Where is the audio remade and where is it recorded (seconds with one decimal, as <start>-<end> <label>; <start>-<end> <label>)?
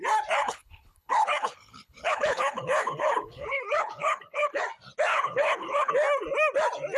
0.0-0.4 recorded; 0.4-4.6 remade; 4.6-5.1 recorded; 5.1-5.9 remade; 5.9-7.0 recorded